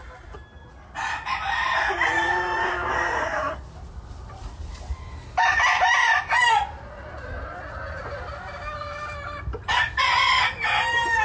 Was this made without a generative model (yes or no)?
yes